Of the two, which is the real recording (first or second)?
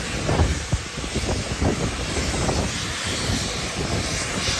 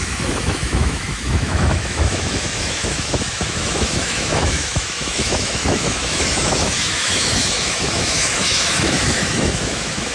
first